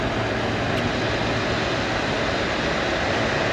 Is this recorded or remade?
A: recorded